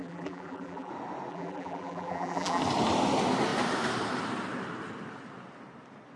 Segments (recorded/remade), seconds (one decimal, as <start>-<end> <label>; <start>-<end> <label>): 0.0-0.9 remade; 0.9-1.3 recorded; 1.3-2.6 remade; 2.6-6.2 recorded